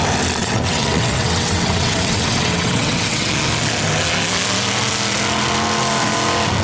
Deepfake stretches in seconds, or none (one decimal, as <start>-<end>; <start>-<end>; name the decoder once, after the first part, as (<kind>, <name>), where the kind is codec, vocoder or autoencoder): 0.4-3.3 (vocoder, WaveNeXt)